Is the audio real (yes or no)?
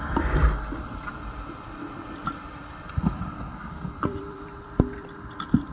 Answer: no